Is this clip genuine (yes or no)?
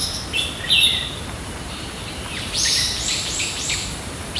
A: no